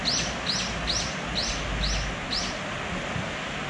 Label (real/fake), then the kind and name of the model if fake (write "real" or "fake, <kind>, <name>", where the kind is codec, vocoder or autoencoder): real